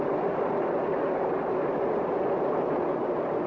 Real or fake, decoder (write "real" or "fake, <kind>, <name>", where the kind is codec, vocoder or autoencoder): real